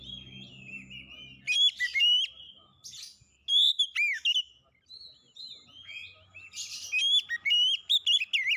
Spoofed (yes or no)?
no